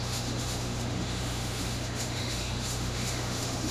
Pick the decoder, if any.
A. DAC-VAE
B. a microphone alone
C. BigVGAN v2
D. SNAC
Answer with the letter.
A